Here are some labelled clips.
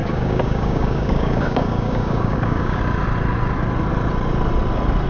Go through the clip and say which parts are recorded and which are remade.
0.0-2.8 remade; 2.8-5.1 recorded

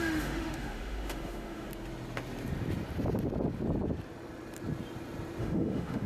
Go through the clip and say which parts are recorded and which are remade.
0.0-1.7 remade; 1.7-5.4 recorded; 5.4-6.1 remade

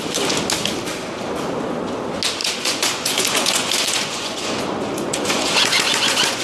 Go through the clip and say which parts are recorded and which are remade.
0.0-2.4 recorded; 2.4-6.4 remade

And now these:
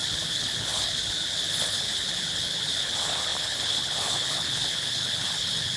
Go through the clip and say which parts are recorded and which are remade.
0.0-5.8 remade

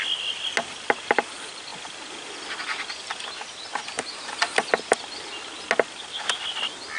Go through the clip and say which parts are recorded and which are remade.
0.0-7.0 recorded

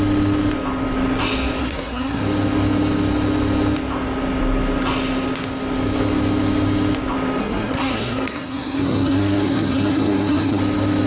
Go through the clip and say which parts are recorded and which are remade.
0.0-1.6 recorded; 1.6-2.2 remade; 2.2-7.4 recorded; 7.4-10.6 remade; 10.6-11.1 recorded

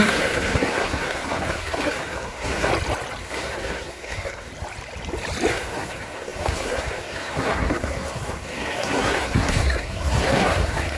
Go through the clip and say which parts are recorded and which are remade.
0.0-2.7 remade; 2.7-3.2 recorded; 3.2-4.5 remade; 4.5-5.5 recorded; 5.5-11.0 remade

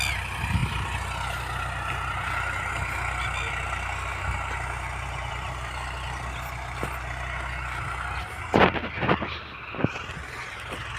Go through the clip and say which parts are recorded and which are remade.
0.0-11.0 recorded